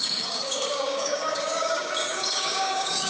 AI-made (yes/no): yes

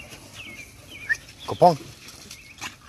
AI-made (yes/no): no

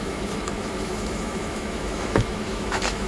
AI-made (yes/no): yes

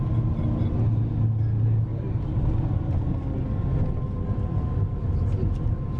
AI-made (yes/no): no